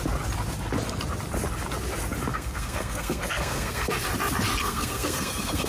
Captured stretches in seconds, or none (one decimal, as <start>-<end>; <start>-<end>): 0.0-2.3; 3.9-4.6